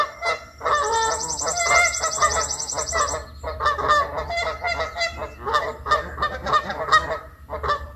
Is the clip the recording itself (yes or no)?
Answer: yes